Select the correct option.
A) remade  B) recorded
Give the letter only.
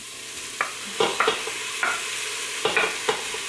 B